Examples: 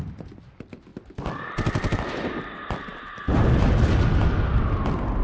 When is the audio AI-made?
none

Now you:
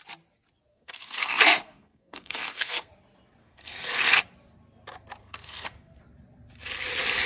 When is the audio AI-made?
0.7-2.9 (codec, SNAC); 3.4-4.2; 5.2-6.0

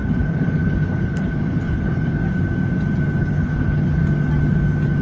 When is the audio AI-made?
0.0-2.2 (codec, HILCodec); 3.2-4.0

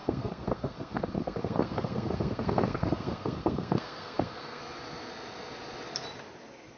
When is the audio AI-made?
0.0-4.6 (codec, SNAC)